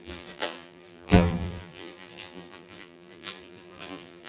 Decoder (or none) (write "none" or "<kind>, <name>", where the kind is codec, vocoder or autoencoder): vocoder, BigVGAN v2